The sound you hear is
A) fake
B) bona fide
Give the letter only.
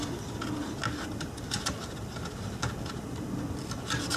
B